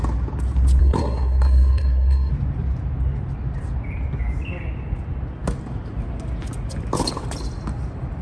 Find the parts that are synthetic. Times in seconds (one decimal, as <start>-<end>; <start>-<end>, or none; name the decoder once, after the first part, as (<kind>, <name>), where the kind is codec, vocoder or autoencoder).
0.8-2.3 (codec, SNAC)